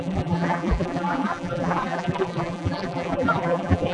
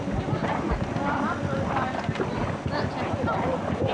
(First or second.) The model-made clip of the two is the first